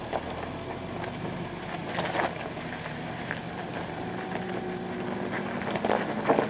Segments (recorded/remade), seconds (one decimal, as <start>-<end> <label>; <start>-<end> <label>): 0.0-1.8 recorded; 1.8-4.5 remade; 4.5-6.5 recorded